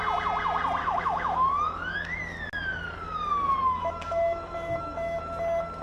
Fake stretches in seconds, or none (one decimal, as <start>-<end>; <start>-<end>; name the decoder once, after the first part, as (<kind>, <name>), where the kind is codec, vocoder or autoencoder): 0.8-2.2 (autoencoder, DAC-VAE); 3.6-5.2